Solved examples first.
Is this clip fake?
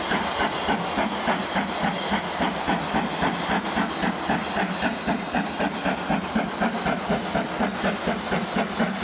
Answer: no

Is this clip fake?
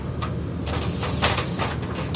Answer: no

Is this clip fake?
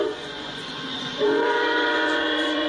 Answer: yes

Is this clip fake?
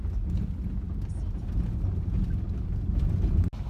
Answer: no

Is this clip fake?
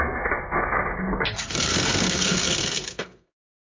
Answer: yes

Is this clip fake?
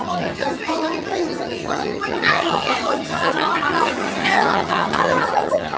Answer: yes